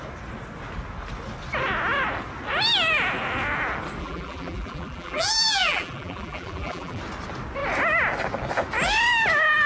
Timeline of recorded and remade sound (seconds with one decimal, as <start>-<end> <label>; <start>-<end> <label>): 0.0-4.0 recorded; 4.0-7.0 remade; 7.0-9.7 recorded

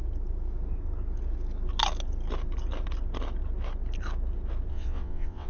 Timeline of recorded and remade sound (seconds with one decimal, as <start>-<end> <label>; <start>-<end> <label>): 0.0-4.7 recorded; 4.7-5.5 remade

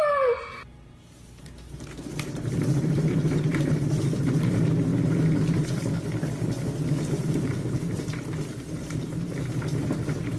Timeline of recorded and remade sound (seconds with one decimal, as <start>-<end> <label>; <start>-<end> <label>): 0.0-4.9 remade; 4.9-7.5 recorded; 7.5-10.4 remade

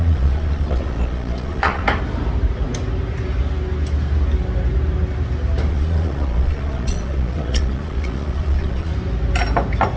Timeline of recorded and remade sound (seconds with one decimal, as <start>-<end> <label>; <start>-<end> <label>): 0.0-1.8 remade; 1.8-5.7 recorded; 5.7-8.9 remade; 8.9-10.0 recorded

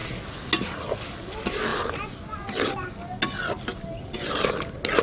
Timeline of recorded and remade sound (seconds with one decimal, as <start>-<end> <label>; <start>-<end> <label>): 0.0-5.0 recorded

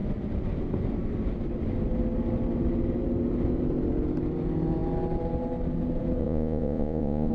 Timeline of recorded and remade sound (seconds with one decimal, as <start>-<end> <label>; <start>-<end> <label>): 0.0-6.2 recorded; 6.2-7.3 remade